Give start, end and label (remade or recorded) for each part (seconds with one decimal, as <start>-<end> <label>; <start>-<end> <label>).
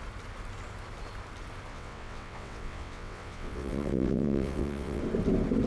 0.0-1.7 recorded; 1.7-5.0 remade; 5.0-5.7 recorded